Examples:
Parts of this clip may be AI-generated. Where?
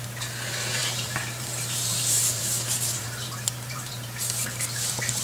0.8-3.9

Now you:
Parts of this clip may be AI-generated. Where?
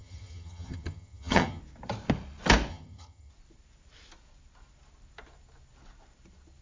0.0-1.6; 2.7-3.3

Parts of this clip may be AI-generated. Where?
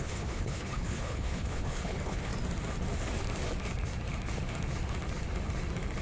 0.0-2.3